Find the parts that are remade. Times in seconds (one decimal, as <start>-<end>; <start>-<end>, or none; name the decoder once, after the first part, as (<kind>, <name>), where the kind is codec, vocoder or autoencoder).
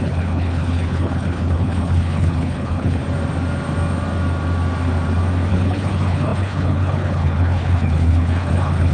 0.0-3.0 (codec, HILCodec); 5.5-8.9